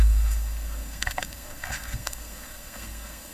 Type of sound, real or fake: fake